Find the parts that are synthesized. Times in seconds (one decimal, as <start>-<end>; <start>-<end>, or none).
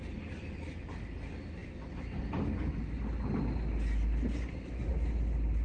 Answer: none